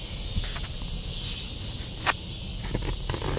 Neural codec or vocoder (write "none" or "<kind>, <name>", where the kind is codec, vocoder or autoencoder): none